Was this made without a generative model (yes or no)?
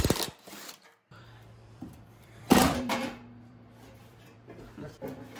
no